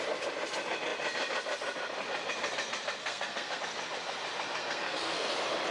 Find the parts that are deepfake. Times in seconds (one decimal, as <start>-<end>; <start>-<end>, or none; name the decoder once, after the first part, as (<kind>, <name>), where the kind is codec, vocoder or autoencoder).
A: 3.0-3.6 (codec, SNAC); 4.6-5.3